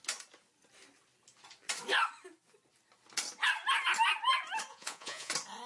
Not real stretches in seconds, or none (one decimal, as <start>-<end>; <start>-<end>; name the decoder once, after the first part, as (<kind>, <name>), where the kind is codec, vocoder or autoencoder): 4.7-5.3 (vocoder, Vocos)